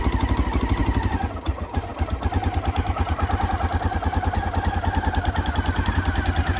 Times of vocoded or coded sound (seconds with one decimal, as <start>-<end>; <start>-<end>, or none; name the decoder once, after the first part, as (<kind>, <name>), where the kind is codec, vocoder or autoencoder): none